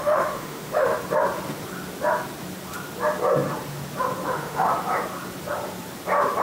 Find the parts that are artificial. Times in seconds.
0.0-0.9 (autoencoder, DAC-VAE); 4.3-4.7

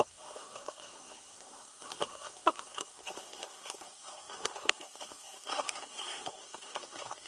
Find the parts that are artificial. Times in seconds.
0.0-7.3 (codec, SNAC)

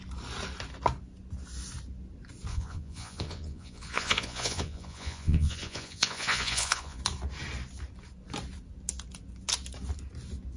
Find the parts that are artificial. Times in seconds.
2.5-7.0 (vocoder, Vocos)

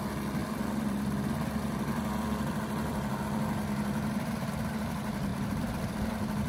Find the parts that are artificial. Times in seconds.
0.4-4.3 (vocoder, BigVGAN v2); 5.3-5.8